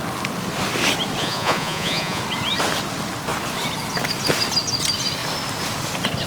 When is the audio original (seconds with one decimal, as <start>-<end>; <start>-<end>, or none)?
0.0-1.2; 2.2-6.3